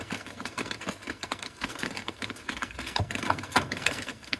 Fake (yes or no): yes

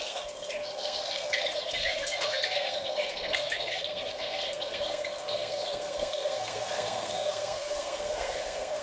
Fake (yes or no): yes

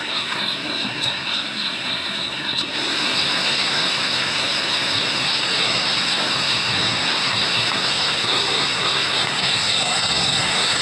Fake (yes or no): yes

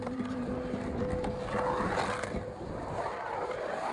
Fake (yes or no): no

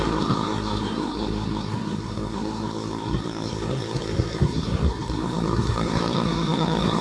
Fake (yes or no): yes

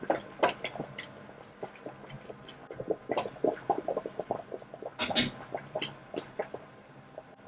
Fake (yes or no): no